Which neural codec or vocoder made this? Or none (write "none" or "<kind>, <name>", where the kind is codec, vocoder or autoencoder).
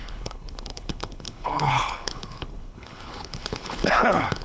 codec, HILCodec